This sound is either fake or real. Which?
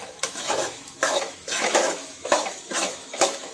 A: fake